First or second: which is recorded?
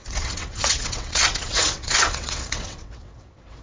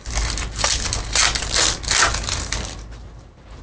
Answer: second